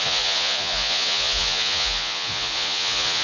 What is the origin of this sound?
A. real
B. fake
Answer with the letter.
B